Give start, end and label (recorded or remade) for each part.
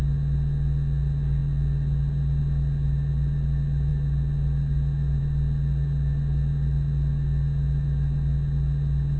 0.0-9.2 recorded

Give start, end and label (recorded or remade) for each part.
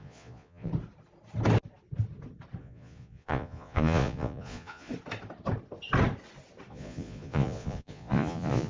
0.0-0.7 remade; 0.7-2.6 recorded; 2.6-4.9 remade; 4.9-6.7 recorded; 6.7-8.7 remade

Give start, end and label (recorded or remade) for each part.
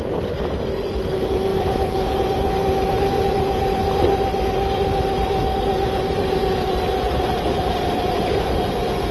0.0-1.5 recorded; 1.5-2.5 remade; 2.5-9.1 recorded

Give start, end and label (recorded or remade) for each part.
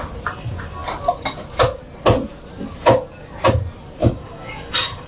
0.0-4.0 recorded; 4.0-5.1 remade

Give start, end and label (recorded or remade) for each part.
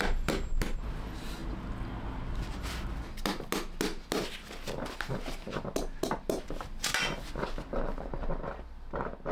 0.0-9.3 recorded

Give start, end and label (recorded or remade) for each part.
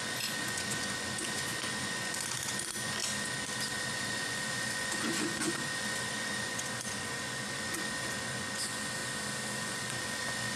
0.0-3.0 remade; 3.0-3.9 recorded; 3.9-9.0 remade; 9.0-9.5 recorded; 9.5-10.6 remade